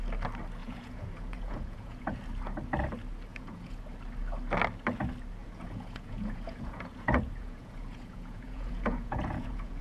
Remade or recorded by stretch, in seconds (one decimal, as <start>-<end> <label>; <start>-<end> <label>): 0.0-0.6 recorded; 0.6-2.2 remade; 2.2-3.3 recorded; 3.3-3.8 remade; 3.8-5.4 recorded; 5.4-9.8 remade